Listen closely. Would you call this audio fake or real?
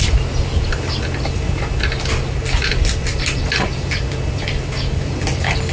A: real